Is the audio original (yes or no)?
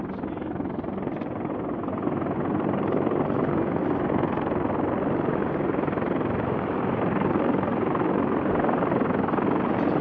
yes